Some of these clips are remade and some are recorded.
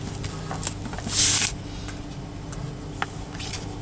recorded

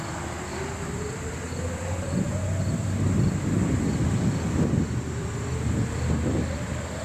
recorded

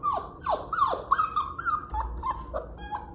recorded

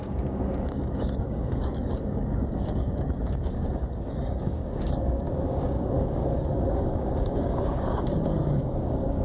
remade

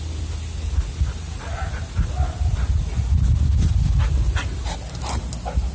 recorded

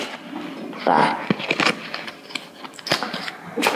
recorded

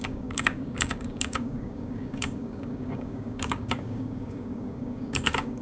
remade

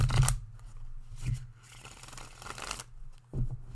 recorded